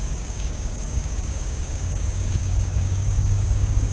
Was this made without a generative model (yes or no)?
no